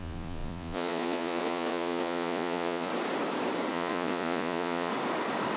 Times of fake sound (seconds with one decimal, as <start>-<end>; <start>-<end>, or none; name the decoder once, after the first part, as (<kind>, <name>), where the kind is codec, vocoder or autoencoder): 0.0-2.9 (vocoder, Vocos); 3.7-4.9